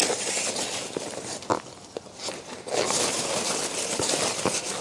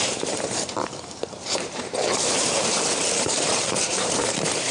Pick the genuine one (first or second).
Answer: first